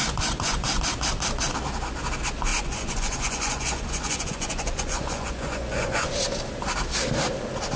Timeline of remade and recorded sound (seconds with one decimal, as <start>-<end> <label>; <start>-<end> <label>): 0.0-0.8 remade; 0.8-2.5 recorded; 2.5-6.1 remade; 6.1-7.8 recorded